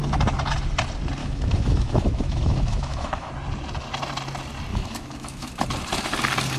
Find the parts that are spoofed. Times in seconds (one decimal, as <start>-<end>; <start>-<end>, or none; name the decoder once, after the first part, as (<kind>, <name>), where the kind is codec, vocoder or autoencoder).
1.2-3.3 (autoencoder, DAC-VAE); 4.7-5.5